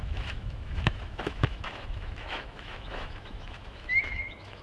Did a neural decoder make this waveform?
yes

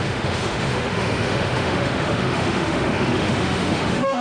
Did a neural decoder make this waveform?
yes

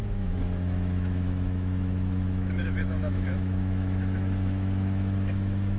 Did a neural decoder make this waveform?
yes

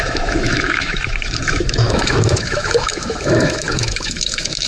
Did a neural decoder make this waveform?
yes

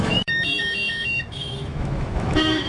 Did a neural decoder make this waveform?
yes